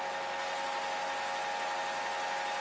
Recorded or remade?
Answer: recorded